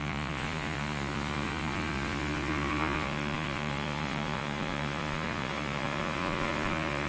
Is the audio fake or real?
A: fake